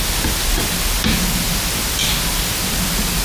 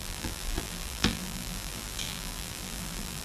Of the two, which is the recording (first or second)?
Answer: first